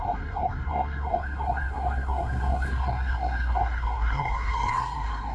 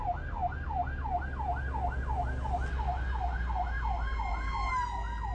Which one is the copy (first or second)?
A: first